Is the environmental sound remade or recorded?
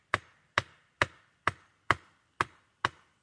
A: recorded